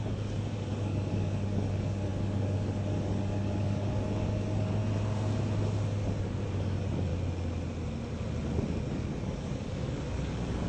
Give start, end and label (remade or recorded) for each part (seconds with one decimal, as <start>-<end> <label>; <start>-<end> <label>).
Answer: 0.0-4.8 remade; 4.8-6.2 recorded; 6.2-7.1 remade; 7.1-8.8 recorded; 8.8-10.7 remade